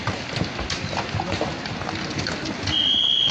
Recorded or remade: recorded